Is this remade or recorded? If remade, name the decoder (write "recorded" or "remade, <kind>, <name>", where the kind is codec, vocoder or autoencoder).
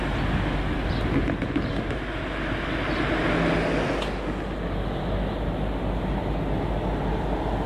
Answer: recorded